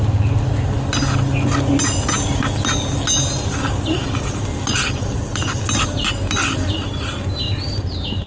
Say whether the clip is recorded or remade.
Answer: recorded